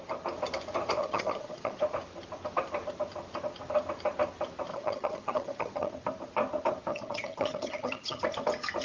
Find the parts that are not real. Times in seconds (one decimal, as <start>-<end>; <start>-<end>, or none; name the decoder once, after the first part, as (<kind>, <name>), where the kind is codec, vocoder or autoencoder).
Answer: 1.0-1.8 (vocoder, HiFi-GAN); 4.7-5.9; 6.9-8.2